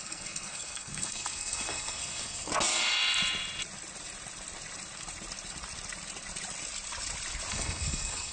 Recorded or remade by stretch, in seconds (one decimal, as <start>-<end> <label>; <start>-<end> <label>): 0.0-2.5 remade; 2.5-7.5 recorded; 7.5-8.3 remade